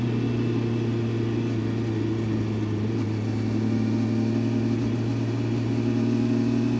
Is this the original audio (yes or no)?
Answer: yes